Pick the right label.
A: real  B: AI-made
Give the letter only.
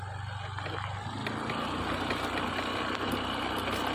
A